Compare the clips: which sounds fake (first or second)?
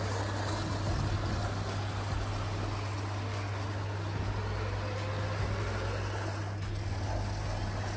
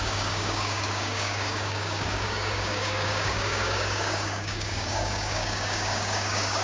second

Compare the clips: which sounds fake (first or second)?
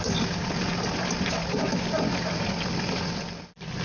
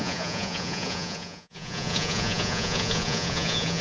second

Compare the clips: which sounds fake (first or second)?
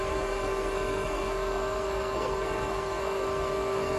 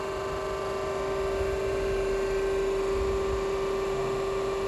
first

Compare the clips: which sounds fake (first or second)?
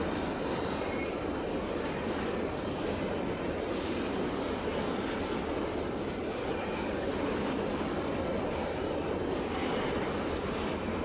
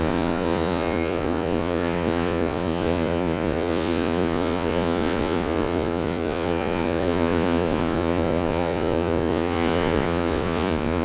second